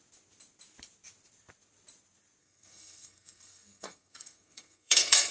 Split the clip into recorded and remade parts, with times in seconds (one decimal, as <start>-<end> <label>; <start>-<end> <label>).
0.0-2.4 recorded; 2.4-5.3 remade